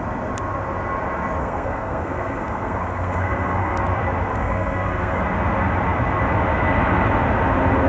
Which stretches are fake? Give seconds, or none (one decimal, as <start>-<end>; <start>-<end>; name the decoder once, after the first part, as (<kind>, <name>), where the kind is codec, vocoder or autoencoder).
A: 1.4-3.8 (codec, SNAC); 4.3-5.2